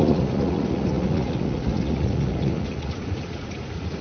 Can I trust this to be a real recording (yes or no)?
no